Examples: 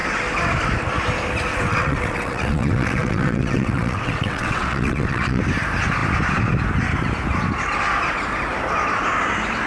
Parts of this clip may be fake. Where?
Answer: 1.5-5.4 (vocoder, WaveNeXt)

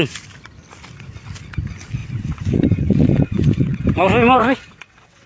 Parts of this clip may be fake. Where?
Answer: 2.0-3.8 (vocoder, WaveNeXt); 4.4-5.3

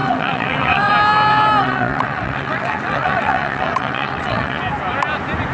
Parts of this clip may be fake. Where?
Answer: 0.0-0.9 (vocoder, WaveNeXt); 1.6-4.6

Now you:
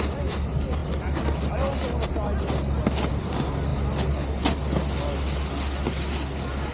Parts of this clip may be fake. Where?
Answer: none